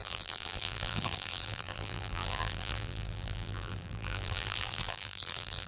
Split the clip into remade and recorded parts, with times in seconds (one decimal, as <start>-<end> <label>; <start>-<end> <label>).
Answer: 0.0-5.7 remade